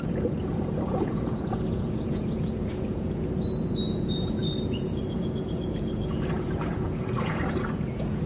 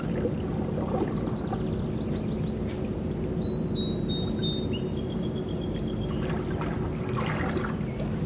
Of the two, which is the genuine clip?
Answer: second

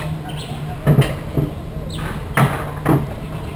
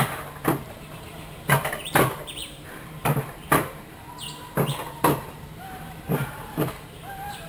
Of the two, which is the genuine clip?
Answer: first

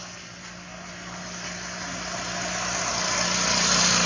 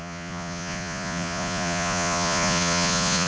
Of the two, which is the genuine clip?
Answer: first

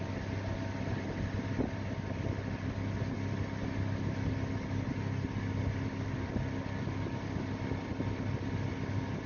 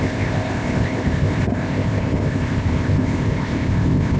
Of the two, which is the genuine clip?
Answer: first